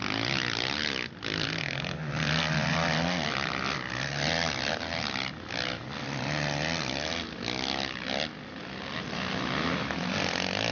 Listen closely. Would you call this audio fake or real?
real